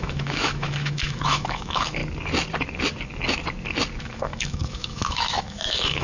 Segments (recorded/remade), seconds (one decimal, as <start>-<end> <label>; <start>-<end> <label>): 0.0-2.0 remade; 2.0-4.0 recorded; 4.0-6.0 remade